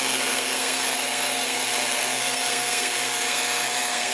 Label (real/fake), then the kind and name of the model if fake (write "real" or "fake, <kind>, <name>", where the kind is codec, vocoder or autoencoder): fake, codec, SNAC